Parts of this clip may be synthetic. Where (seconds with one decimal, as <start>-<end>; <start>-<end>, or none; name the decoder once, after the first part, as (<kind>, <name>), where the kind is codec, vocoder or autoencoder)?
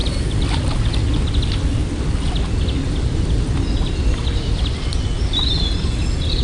none